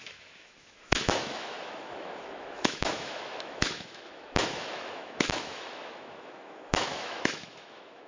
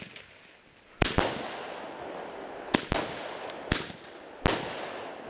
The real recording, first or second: second